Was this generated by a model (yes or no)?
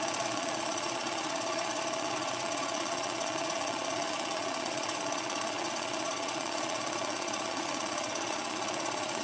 yes